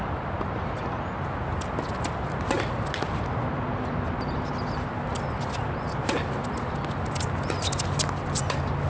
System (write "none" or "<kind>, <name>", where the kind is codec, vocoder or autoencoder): none